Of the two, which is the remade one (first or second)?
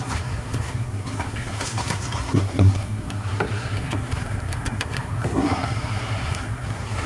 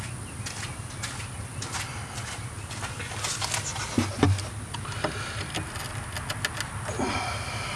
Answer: first